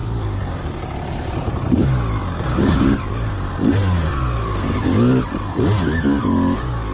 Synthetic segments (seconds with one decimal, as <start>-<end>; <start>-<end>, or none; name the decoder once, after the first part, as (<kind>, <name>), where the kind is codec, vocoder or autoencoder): 0.0-4.1 (vocoder, BigVGAN v2)